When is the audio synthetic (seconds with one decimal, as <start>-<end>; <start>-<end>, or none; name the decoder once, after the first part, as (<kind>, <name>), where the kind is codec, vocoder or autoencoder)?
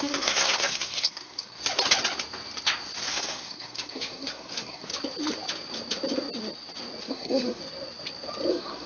0.0-1.6 (codec, SNAC); 3.1-4.9; 7.0-7.6; 8.5-8.9